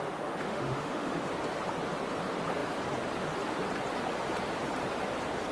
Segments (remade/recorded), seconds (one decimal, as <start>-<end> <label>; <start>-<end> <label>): 0.0-1.3 remade; 1.3-5.5 recorded